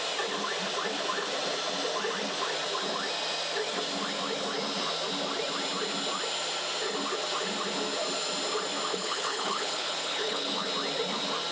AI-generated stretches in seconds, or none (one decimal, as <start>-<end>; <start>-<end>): 8.9-10.7